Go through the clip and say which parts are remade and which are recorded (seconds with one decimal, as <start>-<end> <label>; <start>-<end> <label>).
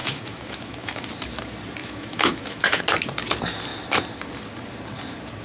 0.0-1.1 remade; 1.1-1.8 recorded; 1.8-2.8 remade; 2.8-5.4 recorded